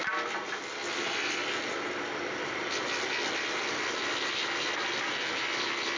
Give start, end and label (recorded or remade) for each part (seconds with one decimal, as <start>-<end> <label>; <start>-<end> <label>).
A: 0.0-3.6 recorded; 3.6-6.0 remade